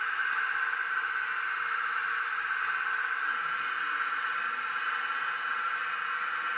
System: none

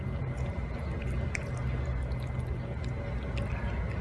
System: none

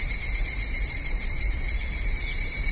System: vocoder, BigVGAN v2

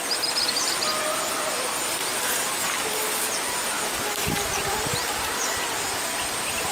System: none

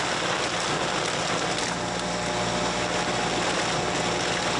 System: none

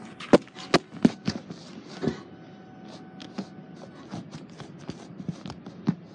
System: none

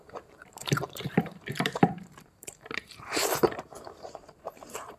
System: vocoder, BigVGAN v2